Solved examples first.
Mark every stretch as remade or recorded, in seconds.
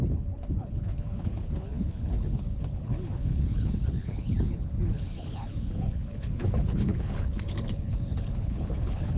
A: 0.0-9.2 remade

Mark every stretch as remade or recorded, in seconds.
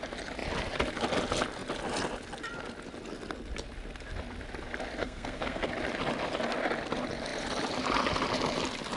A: 0.0-5.0 recorded; 5.0-5.7 remade; 5.7-9.0 recorded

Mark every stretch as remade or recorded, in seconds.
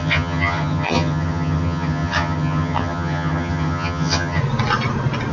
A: 0.0-4.4 remade; 4.4-5.3 recorded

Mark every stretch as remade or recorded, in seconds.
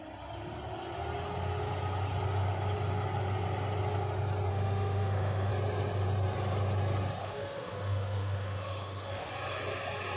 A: 0.0-4.5 recorded; 4.5-5.5 remade; 5.5-7.2 recorded; 7.2-9.3 remade; 9.3-10.2 recorded